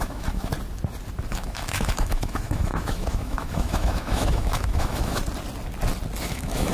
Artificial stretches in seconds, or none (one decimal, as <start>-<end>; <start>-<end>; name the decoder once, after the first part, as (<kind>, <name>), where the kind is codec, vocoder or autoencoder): 0.0-0.5 (autoencoder, DAC-VAE); 1.3-5.2; 6.2-6.7